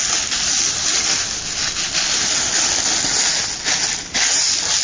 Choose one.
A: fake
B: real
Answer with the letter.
B